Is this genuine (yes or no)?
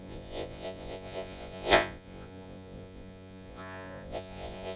no